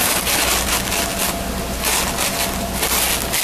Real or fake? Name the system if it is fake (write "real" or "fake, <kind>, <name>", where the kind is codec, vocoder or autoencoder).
real